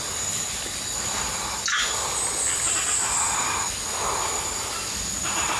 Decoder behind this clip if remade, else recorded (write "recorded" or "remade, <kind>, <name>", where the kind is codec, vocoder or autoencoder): recorded